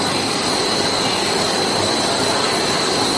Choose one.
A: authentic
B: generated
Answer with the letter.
A